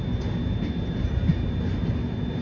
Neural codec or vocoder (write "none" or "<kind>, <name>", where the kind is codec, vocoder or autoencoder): none